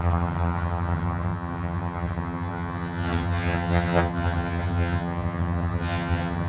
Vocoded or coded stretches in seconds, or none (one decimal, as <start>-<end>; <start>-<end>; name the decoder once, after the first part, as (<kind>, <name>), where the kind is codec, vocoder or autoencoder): 0.0-6.5 (vocoder, HiFi-GAN)